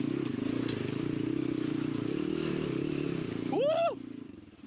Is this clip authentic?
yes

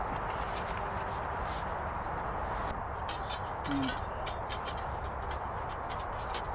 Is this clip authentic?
yes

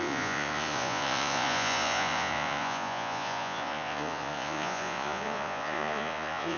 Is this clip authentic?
no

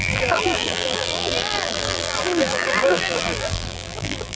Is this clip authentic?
no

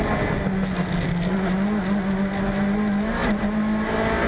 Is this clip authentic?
yes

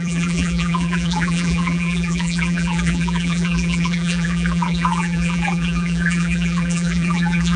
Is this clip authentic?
no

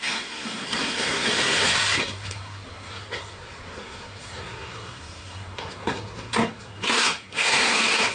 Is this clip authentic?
no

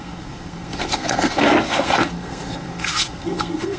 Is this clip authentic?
no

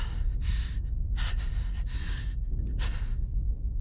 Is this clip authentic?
yes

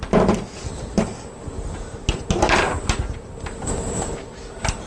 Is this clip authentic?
yes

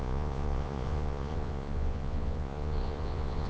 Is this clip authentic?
no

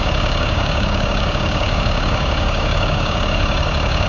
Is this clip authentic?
no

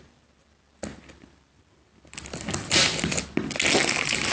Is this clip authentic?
yes